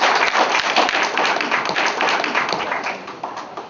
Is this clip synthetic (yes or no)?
no